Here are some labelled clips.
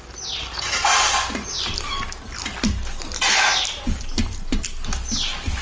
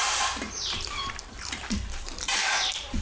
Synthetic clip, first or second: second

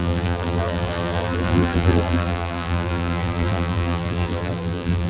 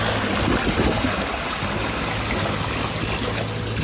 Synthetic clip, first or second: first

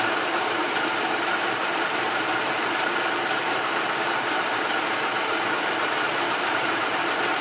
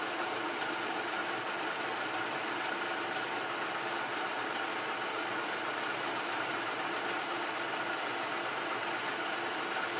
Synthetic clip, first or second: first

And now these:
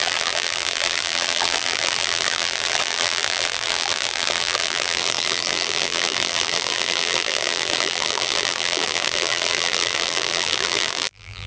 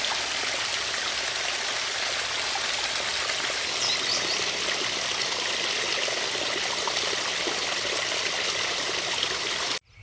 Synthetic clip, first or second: first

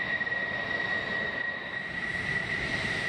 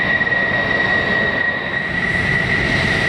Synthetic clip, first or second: first